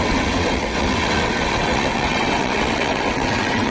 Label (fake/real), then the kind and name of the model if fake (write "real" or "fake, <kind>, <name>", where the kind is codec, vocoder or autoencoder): fake, vocoder, WaveNeXt